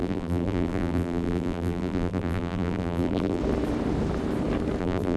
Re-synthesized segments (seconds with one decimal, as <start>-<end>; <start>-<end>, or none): 0.0-3.4; 4.8-5.2